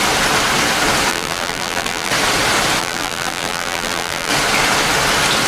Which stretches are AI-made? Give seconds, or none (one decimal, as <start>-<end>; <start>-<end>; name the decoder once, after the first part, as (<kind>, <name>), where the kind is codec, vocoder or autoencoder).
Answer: 1.1-2.1 (vocoder, BigVGAN v2); 2.8-4.3